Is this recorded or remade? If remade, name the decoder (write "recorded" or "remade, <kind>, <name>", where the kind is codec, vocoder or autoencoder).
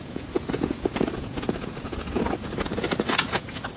remade, vocoder, Vocos